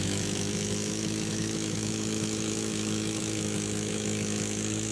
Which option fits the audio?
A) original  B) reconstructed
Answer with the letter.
B